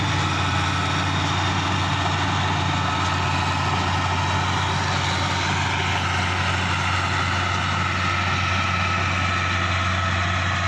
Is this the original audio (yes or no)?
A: yes